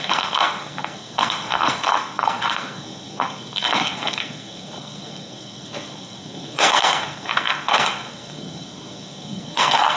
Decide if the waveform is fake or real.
fake